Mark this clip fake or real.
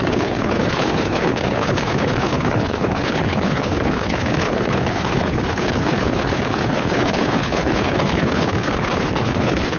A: fake